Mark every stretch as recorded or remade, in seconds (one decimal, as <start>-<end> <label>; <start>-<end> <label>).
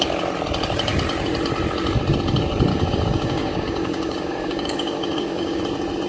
0.0-2.7 recorded; 2.7-5.6 remade; 5.6-6.1 recorded